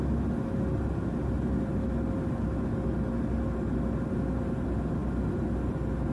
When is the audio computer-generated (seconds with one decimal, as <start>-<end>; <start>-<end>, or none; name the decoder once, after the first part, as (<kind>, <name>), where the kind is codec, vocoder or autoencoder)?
none